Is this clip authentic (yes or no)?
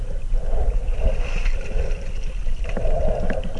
yes